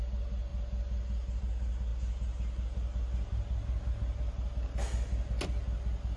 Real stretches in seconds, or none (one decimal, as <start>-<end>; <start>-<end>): 0.0-6.2